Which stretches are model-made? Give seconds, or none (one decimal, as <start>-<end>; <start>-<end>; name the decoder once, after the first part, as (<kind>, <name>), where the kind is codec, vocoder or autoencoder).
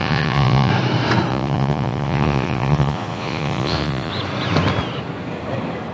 0.0-0.7 (vocoder, Vocos); 1.3-4.1